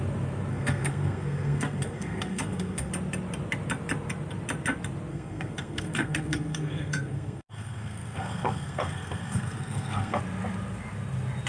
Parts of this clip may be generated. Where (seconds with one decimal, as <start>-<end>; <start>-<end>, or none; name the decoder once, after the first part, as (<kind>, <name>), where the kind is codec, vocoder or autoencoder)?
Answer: 0.5-2.9 (codec, SNAC); 5.1-10.2